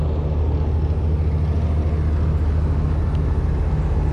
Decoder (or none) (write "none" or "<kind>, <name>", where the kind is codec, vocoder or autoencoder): none